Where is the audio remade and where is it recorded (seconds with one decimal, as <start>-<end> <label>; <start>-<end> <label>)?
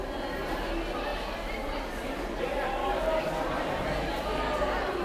0.0-2.8 recorded; 2.8-3.4 remade; 3.4-5.0 recorded